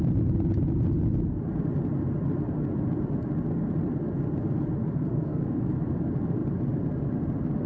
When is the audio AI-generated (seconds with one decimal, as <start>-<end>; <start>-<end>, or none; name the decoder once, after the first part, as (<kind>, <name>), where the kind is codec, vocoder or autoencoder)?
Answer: 4.8-5.6 (codec, SNAC)